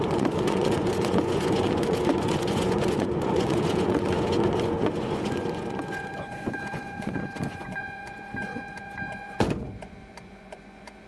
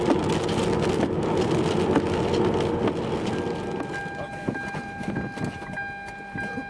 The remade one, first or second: first